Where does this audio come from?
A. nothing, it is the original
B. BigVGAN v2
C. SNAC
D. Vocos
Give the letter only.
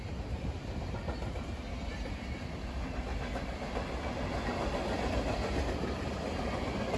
A